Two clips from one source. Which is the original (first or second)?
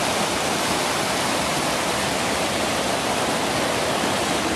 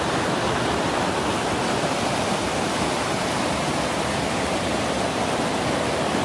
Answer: first